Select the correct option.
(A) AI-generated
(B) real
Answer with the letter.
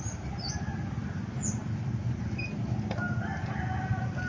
B